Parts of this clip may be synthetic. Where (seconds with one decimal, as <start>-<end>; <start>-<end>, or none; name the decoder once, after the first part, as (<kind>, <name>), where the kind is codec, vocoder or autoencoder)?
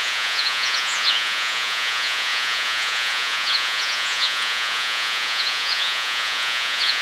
0.0-7.0 (vocoder, Vocos)